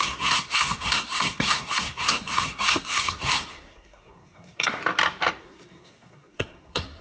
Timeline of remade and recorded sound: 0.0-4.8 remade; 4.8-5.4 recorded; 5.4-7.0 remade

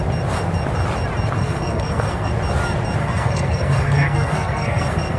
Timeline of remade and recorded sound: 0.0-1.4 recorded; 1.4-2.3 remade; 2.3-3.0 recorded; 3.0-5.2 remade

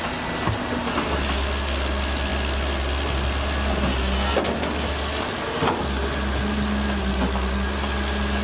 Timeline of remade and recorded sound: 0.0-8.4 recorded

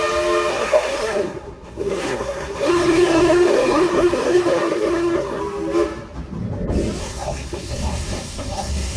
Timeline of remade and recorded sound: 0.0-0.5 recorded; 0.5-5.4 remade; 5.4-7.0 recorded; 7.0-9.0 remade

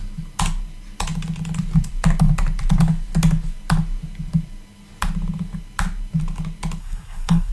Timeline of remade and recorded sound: 0.0-6.8 recorded; 6.8-7.5 remade